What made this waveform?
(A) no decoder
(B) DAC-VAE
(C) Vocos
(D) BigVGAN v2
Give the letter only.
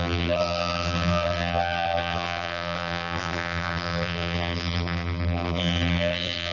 D